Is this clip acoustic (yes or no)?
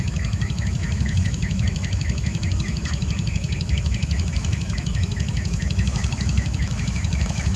no